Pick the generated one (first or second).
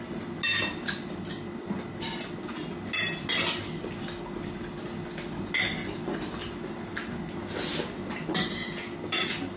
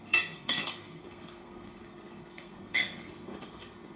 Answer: second